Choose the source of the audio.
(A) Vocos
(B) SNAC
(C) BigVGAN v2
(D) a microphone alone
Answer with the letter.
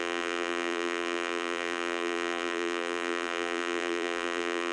C